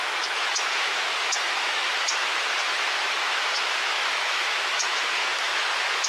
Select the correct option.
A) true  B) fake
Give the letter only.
B